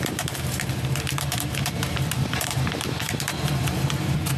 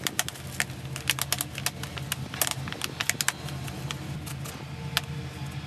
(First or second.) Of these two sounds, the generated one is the first